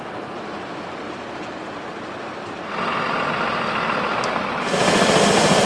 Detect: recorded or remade recorded